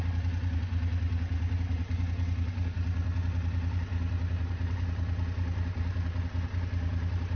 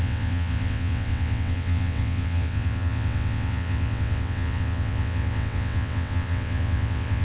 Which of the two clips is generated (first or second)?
second